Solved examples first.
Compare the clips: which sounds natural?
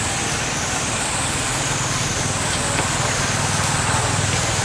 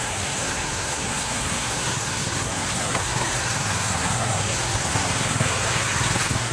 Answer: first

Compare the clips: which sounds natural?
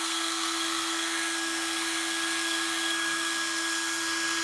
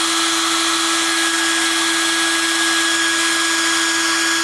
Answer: second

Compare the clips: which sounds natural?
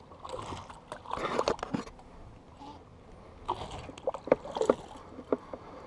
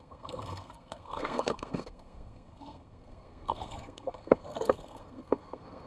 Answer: first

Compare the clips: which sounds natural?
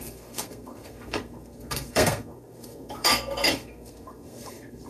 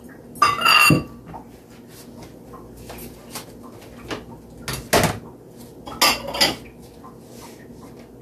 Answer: second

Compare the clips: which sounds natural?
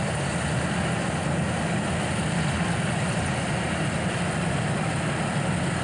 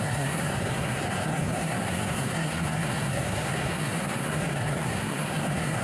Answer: first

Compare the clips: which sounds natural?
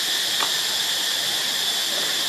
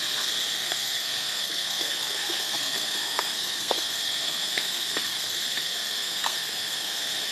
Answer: first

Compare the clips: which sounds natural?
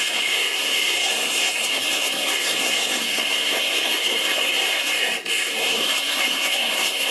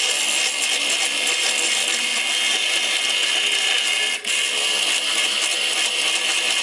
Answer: second